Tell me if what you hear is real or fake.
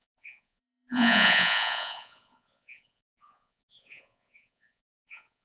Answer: fake